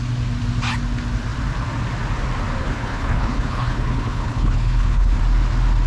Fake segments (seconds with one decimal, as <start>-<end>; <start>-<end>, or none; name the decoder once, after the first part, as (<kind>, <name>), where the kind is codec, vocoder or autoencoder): 2.6-5.2 (codec, HILCodec)